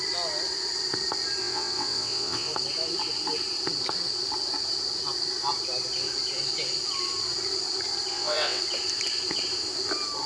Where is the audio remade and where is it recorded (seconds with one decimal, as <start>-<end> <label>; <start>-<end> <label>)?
0.0-1.4 recorded; 1.4-2.5 remade; 2.5-8.1 recorded; 8.1-8.6 remade; 8.6-10.3 recorded